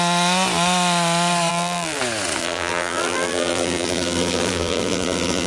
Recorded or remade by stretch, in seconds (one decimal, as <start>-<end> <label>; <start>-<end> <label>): 0.0-1.5 recorded; 1.5-2.0 remade; 2.0-2.4 recorded; 2.4-5.5 remade